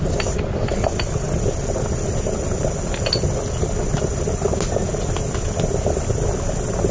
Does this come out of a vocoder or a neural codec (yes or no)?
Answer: no